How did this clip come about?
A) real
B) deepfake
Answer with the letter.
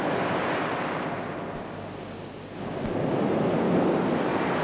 A